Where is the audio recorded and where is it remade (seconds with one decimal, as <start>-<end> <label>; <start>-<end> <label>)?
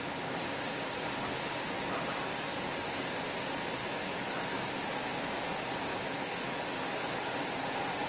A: 0.0-3.8 recorded; 3.8-4.7 remade; 4.7-5.9 recorded; 5.9-6.6 remade; 6.6-8.1 recorded